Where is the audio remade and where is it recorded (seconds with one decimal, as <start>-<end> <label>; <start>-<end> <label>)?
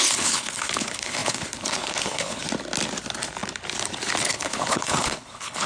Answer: 0.0-2.4 remade; 2.4-4.3 recorded; 4.3-5.7 remade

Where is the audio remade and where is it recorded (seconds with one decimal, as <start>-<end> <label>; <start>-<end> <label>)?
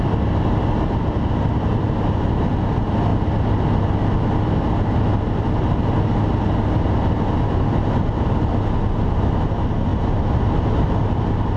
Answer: 0.0-11.6 recorded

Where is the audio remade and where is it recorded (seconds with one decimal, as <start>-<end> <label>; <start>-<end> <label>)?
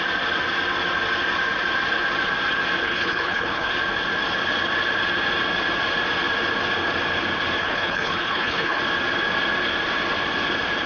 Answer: 0.0-2.8 recorded; 2.8-3.7 remade; 3.7-7.6 recorded; 7.6-8.8 remade; 8.8-10.9 recorded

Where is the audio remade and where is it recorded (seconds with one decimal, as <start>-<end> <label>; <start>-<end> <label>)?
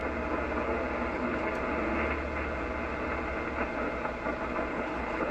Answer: 0.0-1.1 recorded; 1.1-1.5 remade; 1.5-4.7 recorded; 4.7-5.3 remade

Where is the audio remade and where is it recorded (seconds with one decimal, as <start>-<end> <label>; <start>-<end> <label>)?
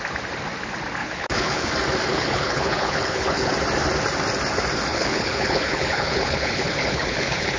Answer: 0.0-1.0 recorded; 1.0-1.7 remade; 1.7-2.1 recorded; 2.1-3.5 remade; 3.5-4.9 recorded; 4.9-7.6 remade